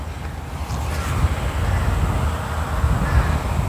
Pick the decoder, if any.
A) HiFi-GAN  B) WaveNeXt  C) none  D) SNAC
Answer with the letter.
C